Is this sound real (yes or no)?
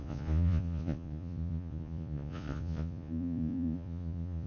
no